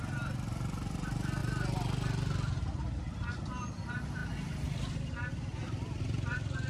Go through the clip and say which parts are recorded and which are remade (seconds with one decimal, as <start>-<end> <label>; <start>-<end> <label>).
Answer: 0.0-6.7 recorded